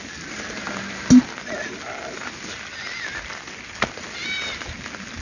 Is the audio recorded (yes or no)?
yes